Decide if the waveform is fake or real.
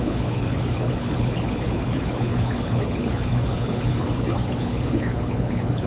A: fake